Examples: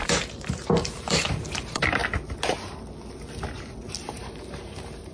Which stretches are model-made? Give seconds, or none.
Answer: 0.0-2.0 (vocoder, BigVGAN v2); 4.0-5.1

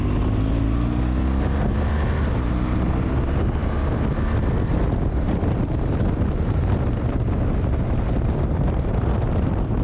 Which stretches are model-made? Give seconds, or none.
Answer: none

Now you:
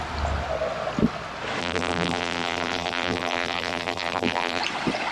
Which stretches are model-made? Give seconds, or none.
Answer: 1.6-4.6 (vocoder, BigVGAN v2)